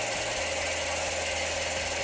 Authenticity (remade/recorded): recorded